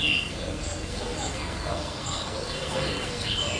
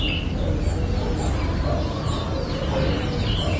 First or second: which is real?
second